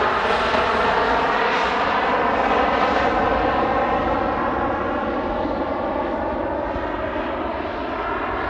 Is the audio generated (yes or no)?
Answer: no